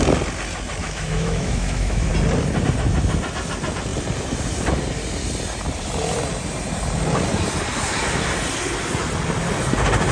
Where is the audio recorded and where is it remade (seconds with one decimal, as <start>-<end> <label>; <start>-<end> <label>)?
0.0-0.8 recorded; 0.8-2.1 remade; 2.1-10.1 recorded